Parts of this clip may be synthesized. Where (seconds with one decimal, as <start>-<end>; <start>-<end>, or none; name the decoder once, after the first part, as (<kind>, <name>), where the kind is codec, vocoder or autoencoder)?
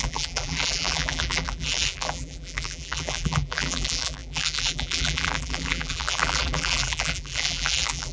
0.0-8.1 (vocoder, BigVGAN v2)